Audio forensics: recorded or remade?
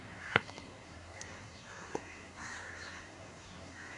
remade